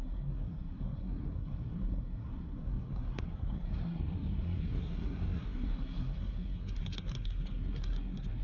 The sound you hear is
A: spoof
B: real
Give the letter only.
A